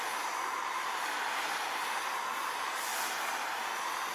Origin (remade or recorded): recorded